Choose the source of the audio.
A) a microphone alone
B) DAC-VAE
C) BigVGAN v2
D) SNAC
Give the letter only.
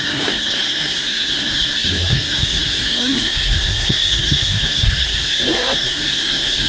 D